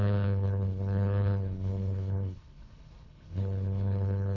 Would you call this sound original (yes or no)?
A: no